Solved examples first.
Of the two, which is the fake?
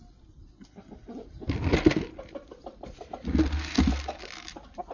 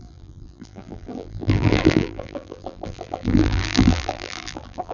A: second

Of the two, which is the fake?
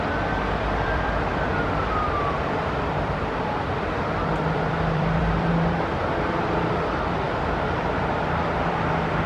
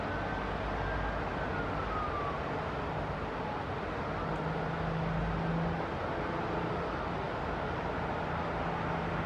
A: first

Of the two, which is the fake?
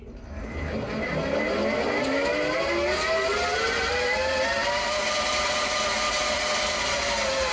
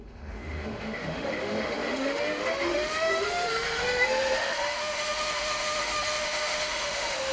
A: second